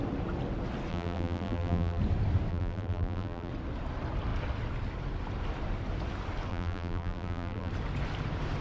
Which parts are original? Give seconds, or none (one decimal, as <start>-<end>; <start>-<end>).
0.0-0.9; 2.0-2.5; 3.5-6.5; 7.7-8.6